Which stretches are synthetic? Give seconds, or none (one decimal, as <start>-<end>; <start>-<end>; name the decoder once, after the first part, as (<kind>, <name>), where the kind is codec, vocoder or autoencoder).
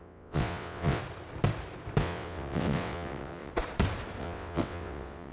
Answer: 0.0-1.0 (vocoder, WaveNeXt); 2.0-3.5; 4.2-5.3